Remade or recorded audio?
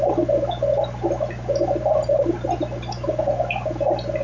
recorded